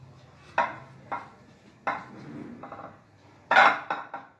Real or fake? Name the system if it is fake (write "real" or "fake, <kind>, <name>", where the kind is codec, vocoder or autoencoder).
real